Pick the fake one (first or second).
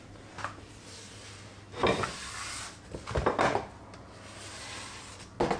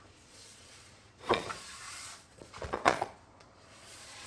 second